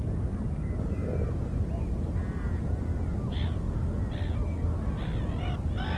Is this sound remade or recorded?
recorded